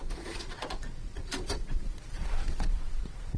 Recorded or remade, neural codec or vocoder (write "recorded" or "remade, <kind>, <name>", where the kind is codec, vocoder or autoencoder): remade, vocoder, Vocos